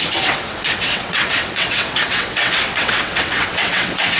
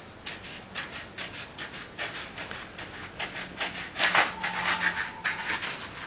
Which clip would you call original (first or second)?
second